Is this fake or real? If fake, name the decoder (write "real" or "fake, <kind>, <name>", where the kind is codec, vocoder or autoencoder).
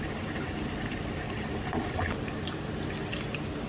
real